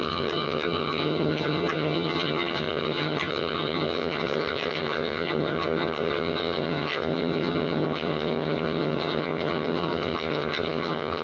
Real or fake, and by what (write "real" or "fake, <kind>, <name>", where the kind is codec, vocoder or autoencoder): fake, vocoder, HiFi-GAN